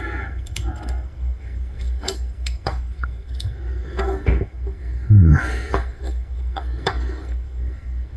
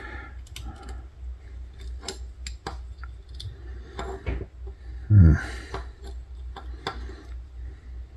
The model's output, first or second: first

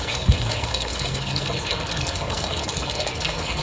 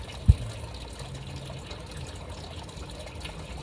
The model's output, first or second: first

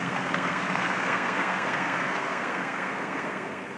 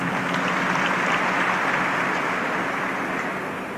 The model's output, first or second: first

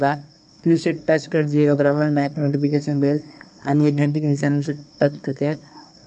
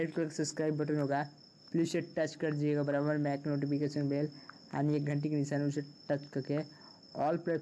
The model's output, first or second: first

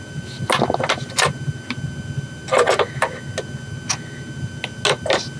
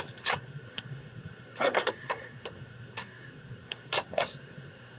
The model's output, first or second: second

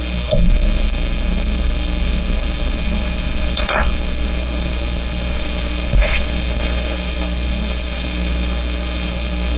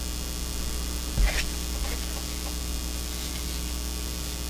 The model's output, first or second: first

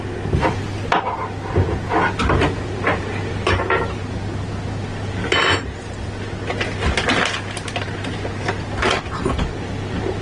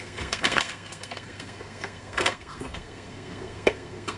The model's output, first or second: second